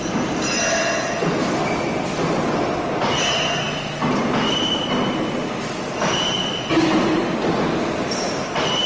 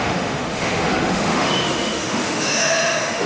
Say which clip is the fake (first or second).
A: second